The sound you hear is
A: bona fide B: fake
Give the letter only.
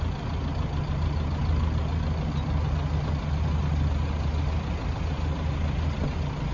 A